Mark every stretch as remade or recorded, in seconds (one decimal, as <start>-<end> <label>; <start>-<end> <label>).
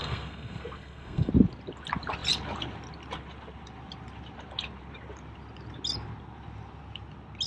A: 0.0-1.3 remade; 1.3-7.5 recorded